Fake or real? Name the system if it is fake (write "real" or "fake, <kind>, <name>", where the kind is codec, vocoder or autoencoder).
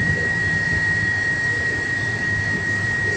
fake, vocoder, BigVGAN v2